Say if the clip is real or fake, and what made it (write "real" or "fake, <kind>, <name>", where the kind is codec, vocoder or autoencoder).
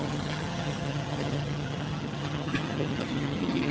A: fake, vocoder, HiFi-GAN